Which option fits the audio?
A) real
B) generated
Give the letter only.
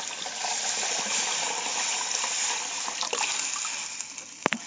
A